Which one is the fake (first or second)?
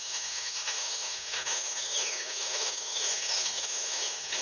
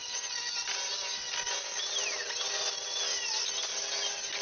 first